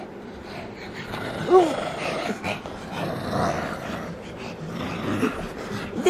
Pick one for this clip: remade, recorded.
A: recorded